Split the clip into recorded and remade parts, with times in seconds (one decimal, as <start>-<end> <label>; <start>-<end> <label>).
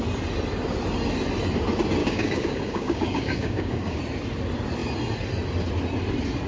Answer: 0.0-2.0 recorded; 2.0-4.0 remade; 4.0-6.5 recorded